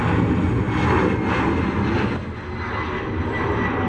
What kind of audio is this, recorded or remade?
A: recorded